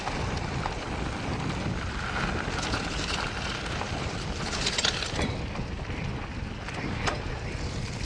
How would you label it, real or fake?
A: real